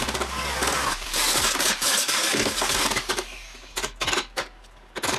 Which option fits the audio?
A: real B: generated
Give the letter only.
B